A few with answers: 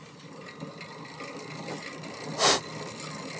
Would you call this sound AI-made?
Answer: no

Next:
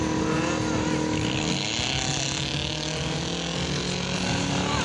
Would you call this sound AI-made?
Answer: no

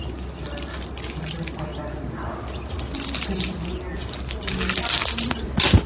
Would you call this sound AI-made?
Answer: no